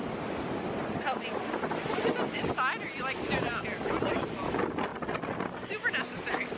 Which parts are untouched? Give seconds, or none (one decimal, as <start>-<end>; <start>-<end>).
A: 0.0-6.6